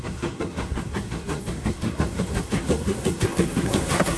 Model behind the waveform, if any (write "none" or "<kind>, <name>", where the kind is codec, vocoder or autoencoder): codec, SNAC